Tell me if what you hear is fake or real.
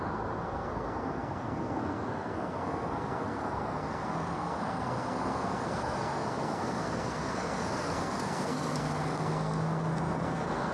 fake